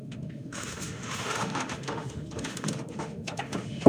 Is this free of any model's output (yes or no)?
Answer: no